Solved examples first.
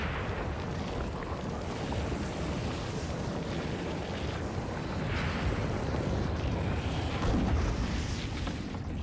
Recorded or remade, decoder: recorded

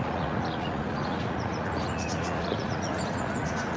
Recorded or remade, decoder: remade, vocoder, Vocos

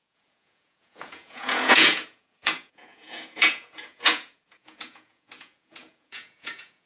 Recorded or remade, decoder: remade, vocoder, Vocos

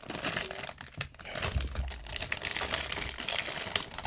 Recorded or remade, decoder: recorded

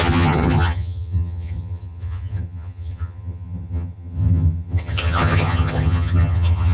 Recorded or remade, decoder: remade, vocoder, HiFi-GAN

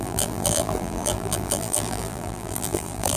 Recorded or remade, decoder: remade, vocoder, BigVGAN v2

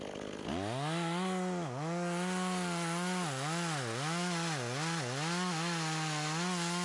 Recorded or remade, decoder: recorded